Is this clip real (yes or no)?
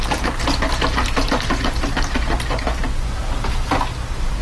yes